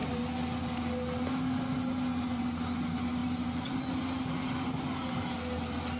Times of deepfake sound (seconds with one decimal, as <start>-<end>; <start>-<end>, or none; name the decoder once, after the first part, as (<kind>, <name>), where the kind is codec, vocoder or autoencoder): none